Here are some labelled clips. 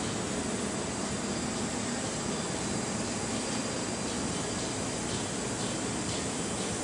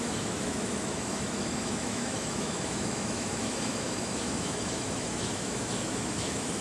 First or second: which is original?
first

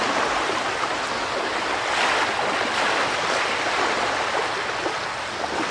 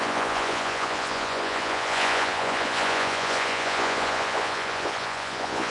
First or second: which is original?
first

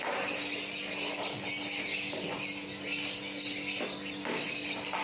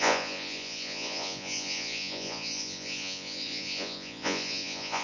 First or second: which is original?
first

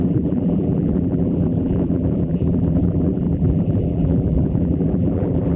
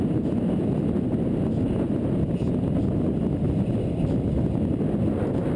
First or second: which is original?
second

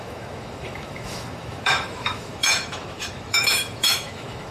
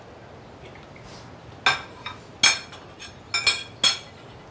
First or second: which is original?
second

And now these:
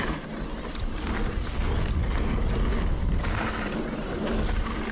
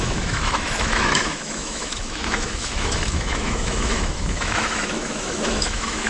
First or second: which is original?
first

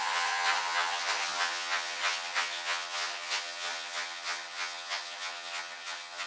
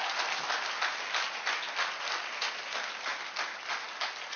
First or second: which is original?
second